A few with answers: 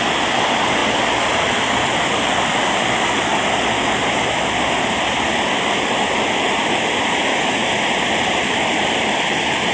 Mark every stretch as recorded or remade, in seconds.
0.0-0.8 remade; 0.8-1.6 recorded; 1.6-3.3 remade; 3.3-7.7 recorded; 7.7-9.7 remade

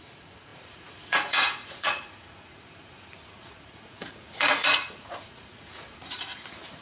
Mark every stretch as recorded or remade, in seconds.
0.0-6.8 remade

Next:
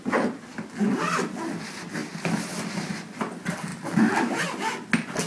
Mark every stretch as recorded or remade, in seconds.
0.0-5.3 recorded